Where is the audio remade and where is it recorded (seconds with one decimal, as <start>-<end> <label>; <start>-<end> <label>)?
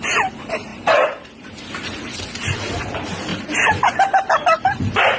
0.0-0.7 recorded; 0.7-2.2 remade; 2.2-5.2 recorded